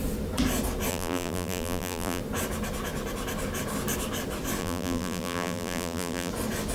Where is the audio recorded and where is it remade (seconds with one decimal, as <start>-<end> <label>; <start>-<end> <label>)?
0.0-0.9 recorded; 0.9-2.2 remade; 2.2-4.6 recorded; 4.6-6.3 remade; 6.3-6.7 recorded